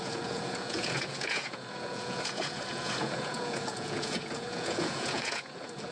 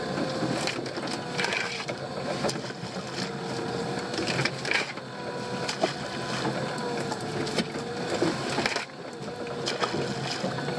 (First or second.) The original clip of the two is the second